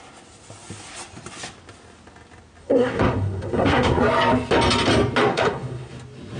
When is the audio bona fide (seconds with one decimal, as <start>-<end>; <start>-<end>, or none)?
0.0-2.6; 4.0-5.3; 5.9-6.4